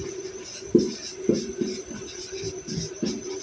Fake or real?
real